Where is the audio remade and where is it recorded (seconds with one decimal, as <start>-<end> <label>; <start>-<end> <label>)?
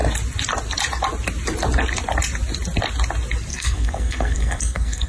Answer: 0.0-3.5 recorded; 3.5-5.1 remade